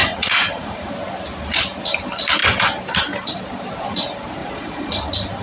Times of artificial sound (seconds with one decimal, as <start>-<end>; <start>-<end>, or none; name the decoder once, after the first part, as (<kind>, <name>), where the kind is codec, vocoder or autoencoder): 0.0-0.9 (vocoder, Vocos); 4.4-5.0